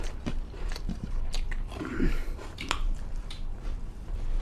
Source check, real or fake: fake